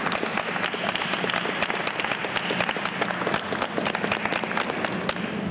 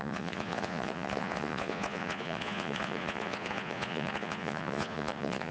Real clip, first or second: first